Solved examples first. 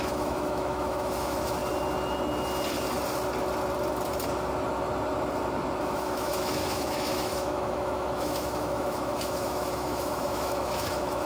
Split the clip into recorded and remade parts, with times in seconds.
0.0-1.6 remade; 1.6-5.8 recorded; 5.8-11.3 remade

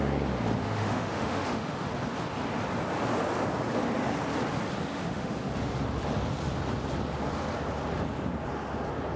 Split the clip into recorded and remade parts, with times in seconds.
0.0-0.6 recorded; 0.6-1.9 remade; 1.9-4.9 recorded; 4.9-5.5 remade; 5.5-9.2 recorded

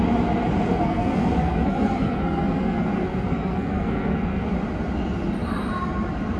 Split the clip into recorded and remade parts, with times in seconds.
0.0-0.7 recorded; 0.7-4.5 remade; 4.5-6.4 recorded

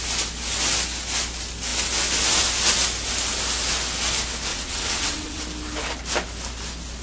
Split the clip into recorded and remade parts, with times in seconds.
0.0-4.5 recorded; 4.5-5.4 remade; 5.4-7.0 recorded

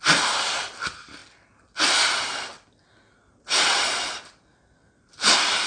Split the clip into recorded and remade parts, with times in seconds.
0.0-1.2 remade; 1.2-3.8 recorded; 3.8-5.7 remade

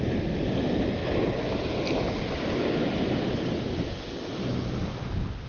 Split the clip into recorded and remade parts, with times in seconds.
0.0-5.5 recorded

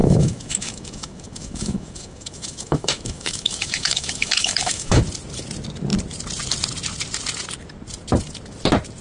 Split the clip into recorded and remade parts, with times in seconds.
0.0-5.0 remade; 5.0-9.0 recorded